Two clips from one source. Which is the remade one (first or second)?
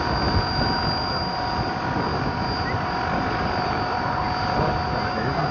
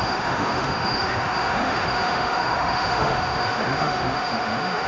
second